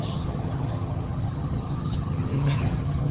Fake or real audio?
fake